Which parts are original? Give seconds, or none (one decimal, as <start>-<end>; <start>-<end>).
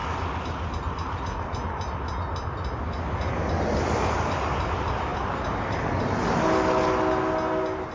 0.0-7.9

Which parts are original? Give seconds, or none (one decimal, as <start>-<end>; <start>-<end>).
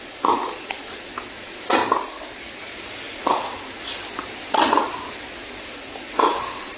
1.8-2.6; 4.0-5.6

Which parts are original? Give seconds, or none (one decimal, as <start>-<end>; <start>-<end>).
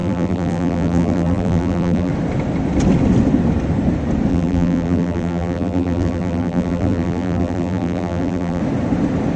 2.1-4.3; 8.6-9.4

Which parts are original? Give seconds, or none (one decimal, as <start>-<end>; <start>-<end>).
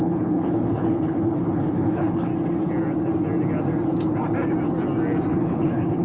2.3-5.3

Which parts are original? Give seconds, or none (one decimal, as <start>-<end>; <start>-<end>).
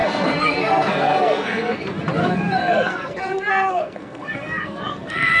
1.8-2.2